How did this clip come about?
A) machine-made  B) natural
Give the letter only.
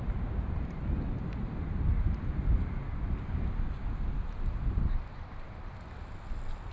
B